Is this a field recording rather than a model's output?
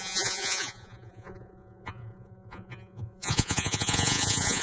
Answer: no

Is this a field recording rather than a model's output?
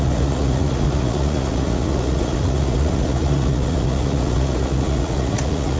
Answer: no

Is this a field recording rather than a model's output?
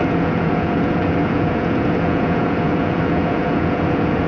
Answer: no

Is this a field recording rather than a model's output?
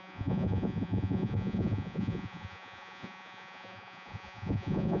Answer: no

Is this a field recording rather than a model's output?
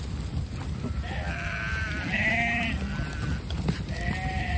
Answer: yes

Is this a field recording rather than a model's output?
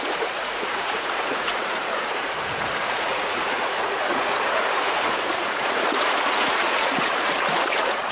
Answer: no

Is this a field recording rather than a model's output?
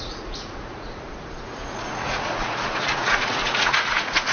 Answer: no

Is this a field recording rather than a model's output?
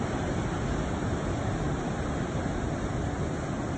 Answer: yes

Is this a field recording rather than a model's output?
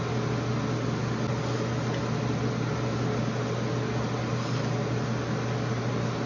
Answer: yes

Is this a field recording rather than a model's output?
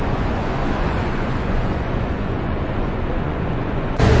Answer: no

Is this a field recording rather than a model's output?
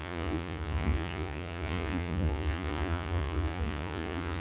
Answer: no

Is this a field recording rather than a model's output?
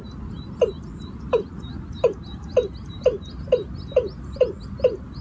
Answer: yes